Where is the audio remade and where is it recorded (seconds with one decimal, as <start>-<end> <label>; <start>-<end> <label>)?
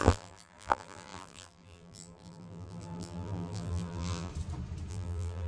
0.0-4.3 remade; 4.3-4.9 recorded; 4.9-5.5 remade